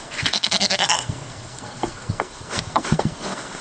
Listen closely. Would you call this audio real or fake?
fake